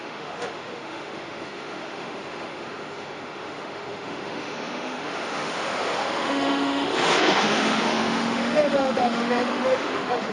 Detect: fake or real fake